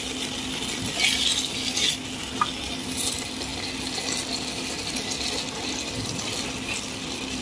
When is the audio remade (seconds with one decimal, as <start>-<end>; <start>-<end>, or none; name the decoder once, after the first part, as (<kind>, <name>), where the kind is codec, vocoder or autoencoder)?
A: none